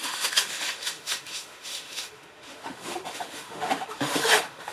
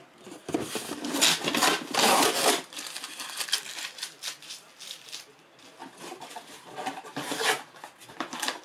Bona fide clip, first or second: second